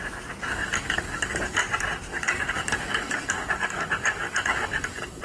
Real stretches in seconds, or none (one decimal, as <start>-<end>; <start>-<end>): 0.0-0.5; 1.6-2.1